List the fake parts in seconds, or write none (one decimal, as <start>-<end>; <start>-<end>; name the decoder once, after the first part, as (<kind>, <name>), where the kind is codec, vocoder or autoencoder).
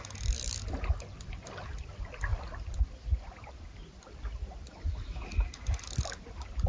none